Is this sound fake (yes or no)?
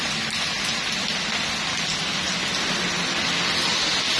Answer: no